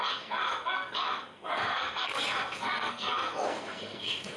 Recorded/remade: remade